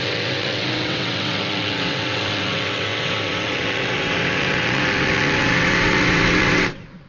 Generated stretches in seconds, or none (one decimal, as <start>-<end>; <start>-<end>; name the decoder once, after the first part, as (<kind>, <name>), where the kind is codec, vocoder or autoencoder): 0.0-7.1 (vocoder, WaveNeXt)